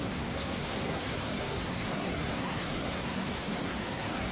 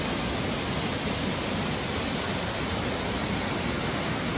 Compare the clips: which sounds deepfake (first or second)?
first